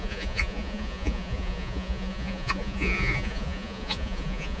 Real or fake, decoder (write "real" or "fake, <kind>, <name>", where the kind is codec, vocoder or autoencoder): fake, vocoder, Vocos